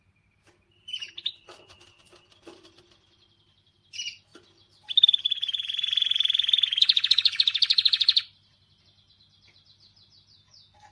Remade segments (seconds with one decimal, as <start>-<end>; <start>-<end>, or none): 0.6-3.7; 4.3-8.8